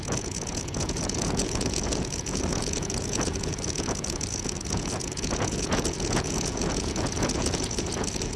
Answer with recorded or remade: remade